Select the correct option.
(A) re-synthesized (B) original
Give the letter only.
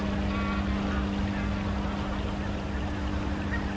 B